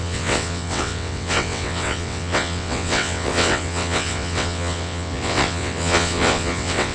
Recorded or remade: remade